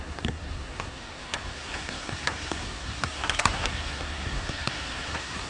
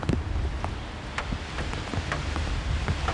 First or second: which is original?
second